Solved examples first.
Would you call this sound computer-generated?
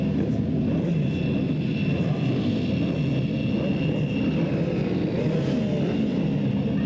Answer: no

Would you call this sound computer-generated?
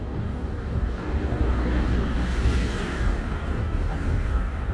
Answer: yes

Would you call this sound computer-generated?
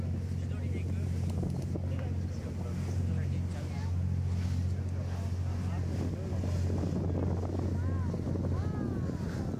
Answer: no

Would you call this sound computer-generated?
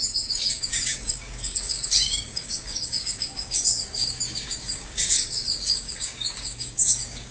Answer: yes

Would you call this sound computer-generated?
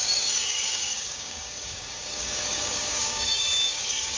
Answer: yes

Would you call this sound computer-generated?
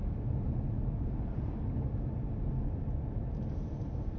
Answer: no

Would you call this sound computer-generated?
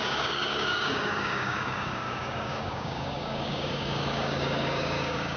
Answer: yes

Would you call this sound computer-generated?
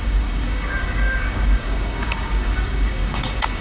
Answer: yes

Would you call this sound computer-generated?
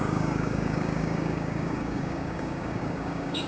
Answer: yes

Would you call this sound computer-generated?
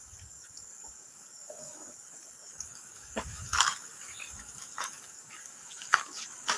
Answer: yes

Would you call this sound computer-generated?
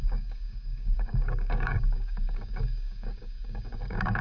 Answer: yes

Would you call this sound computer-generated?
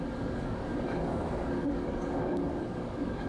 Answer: yes